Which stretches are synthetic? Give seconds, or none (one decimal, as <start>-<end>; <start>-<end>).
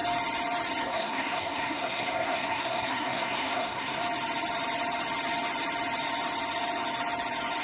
0.8-4.0